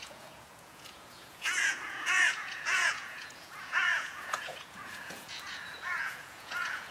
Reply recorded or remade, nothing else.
remade